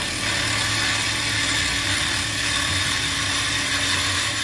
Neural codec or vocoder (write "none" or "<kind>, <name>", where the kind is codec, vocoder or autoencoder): none